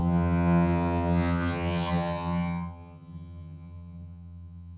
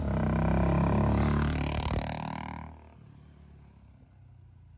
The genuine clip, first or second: second